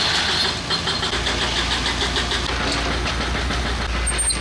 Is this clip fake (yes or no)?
no